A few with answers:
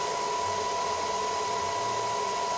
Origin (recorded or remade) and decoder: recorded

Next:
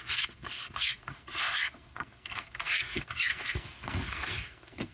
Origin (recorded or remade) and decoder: remade, codec, SNAC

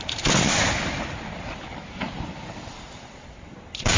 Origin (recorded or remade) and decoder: recorded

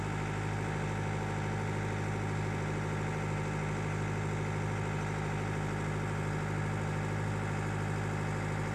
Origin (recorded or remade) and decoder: recorded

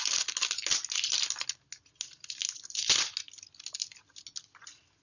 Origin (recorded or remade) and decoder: recorded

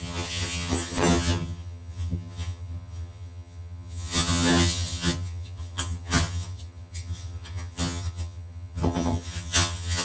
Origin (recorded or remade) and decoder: remade, vocoder, HiFi-GAN